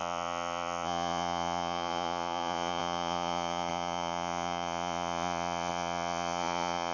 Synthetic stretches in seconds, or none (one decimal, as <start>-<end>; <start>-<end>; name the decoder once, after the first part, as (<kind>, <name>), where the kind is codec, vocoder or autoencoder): 0.0-6.9 (vocoder, Vocos)